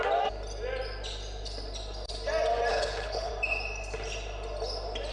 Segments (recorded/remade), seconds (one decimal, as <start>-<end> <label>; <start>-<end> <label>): 0.0-2.7 recorded; 2.7-3.3 remade; 3.3-5.1 recorded